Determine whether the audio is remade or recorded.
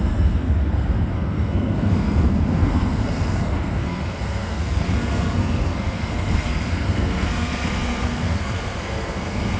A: remade